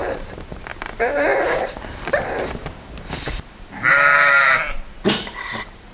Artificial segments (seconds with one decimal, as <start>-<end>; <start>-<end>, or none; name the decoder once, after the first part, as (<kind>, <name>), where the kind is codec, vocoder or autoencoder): 0.0-5.9 (vocoder, BigVGAN v2)

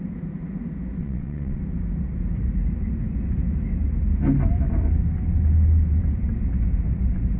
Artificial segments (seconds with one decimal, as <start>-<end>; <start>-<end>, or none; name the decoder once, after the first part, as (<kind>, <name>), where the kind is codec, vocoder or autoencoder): 1.0-1.6 (vocoder, WaveNeXt)

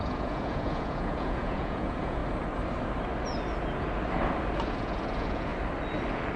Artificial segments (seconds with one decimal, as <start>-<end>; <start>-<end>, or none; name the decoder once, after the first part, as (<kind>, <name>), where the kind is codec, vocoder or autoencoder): 0.0-2.2 (vocoder, Vocos); 4.7-5.5

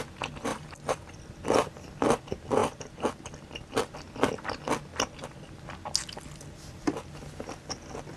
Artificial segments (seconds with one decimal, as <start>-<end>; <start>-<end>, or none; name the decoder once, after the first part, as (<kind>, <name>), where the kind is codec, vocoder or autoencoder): 0.5-1.3 (vocoder, BigVGAN v2); 2.6-3.9; 4.9-5.6

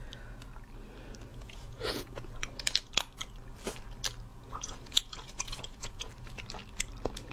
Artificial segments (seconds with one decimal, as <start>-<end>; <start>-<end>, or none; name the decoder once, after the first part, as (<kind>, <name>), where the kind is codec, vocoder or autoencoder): 1.3-2.3 (vocoder, Vocos); 4.3-6.1

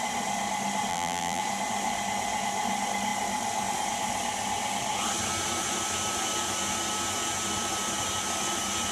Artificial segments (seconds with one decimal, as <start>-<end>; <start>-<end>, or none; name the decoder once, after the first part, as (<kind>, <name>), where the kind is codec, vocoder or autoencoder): 0.9-1.4 (vocoder, BigVGAN v2)

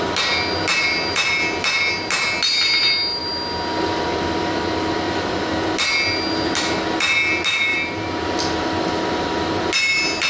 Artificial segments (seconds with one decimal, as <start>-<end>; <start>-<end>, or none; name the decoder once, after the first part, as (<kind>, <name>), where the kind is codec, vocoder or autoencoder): none

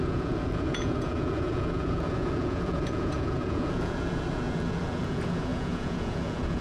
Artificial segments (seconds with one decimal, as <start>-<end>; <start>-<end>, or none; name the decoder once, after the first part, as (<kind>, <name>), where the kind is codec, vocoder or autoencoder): 0.0-6.6 (vocoder, Vocos)